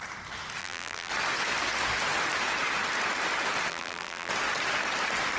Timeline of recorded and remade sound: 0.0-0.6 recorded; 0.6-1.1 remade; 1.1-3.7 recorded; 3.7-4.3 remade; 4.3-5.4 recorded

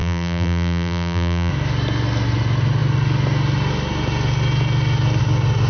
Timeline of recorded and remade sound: 0.0-1.5 remade; 1.5-5.7 recorded

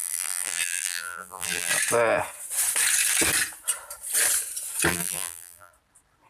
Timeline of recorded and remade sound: 0.0-1.7 remade; 1.7-4.9 recorded; 4.9-5.7 remade; 5.7-6.3 recorded

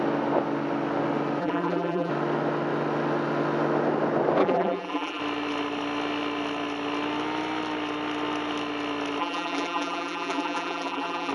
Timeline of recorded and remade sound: 0.0-1.4 recorded; 1.4-2.1 remade; 2.1-4.4 recorded; 4.4-5.2 remade; 5.2-9.2 recorded; 9.2-11.3 remade

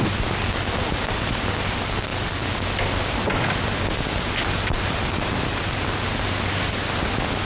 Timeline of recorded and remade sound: 0.0-7.4 recorded

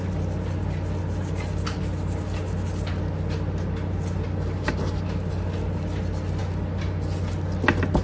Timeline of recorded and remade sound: 0.0-8.0 recorded

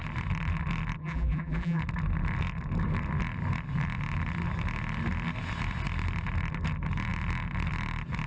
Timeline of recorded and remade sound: 0.0-1.0 recorded; 1.0-1.8 remade; 1.8-8.3 recorded